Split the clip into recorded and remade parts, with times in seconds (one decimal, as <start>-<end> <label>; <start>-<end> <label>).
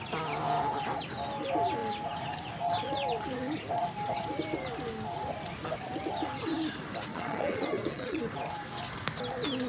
0.0-7.1 recorded; 7.1-8.2 remade; 8.2-9.7 recorded